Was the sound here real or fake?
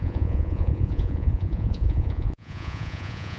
fake